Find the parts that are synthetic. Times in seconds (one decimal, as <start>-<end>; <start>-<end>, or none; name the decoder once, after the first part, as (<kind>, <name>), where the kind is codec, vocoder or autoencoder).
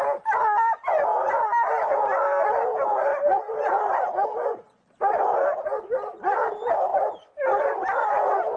none